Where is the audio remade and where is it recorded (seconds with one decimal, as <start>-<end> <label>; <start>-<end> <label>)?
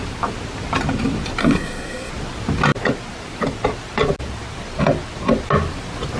0.0-1.4 recorded; 1.4-2.1 remade; 2.1-6.2 recorded